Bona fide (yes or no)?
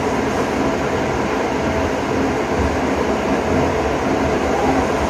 yes